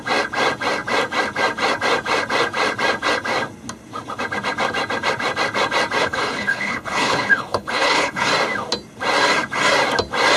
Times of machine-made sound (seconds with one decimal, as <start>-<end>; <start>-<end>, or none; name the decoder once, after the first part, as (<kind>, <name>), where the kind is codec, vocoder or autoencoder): 6.0-8.3 (codec, HILCodec)